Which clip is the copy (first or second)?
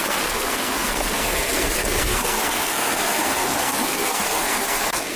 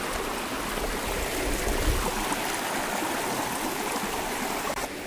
first